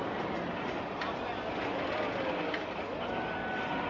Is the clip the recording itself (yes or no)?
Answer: yes